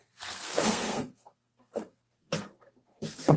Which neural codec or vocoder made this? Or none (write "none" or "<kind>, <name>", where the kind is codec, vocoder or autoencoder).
codec, SNAC